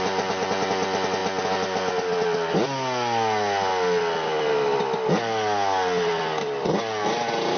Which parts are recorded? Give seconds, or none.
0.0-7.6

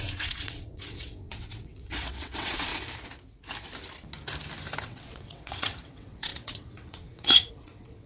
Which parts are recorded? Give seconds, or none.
2.7-4.8

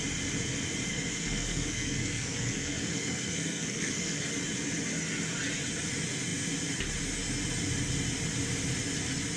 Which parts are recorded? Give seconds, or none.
0.0-0.9; 4.2-9.4

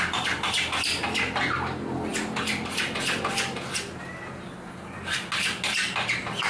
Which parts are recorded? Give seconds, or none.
0.0-6.5

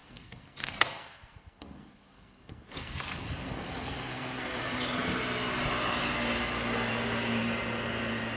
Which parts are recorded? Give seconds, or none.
4.6-8.4

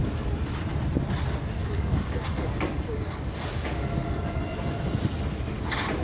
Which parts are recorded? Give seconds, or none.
0.0-1.6; 4.4-6.0